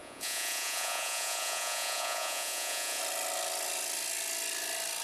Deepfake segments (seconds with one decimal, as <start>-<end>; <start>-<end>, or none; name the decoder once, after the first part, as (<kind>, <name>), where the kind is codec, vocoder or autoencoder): 0.0-3.0 (vocoder, Vocos)